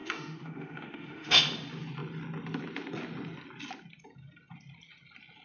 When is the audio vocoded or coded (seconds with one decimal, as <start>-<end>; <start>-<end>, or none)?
0.0-1.4